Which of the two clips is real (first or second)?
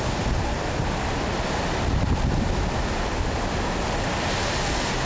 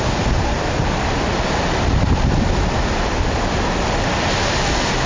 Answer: first